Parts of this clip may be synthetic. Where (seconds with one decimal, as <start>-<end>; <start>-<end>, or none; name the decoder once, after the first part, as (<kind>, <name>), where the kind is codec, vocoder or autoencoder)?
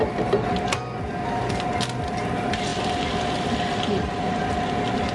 none